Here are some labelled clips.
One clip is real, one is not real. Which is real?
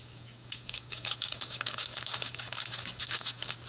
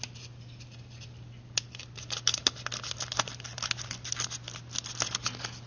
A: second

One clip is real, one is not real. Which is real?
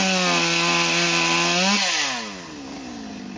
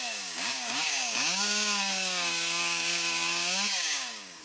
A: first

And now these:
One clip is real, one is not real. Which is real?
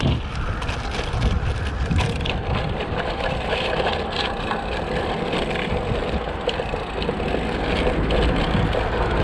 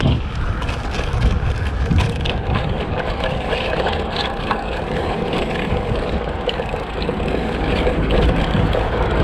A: first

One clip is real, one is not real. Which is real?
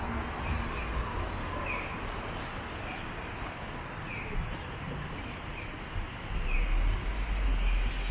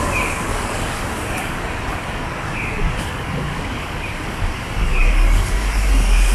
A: first